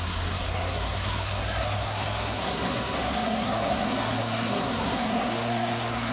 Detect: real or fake fake